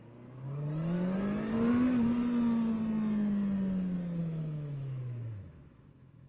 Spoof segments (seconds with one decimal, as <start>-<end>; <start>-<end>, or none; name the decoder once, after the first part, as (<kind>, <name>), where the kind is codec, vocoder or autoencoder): 4.2-6.3 (autoencoder, DAC-VAE)